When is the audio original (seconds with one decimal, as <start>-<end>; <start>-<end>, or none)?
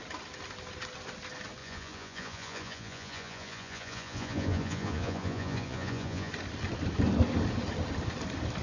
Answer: 0.0-1.6; 6.3-8.6